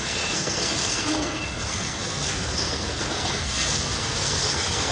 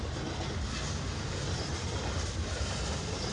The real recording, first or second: second